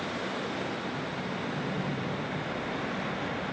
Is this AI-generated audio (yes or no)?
no